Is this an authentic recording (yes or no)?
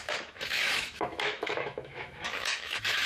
no